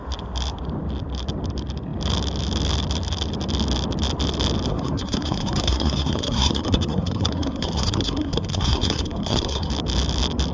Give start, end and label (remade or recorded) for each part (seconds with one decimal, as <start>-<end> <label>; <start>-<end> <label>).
0.0-4.7 recorded; 4.7-9.7 remade; 9.7-10.5 recorded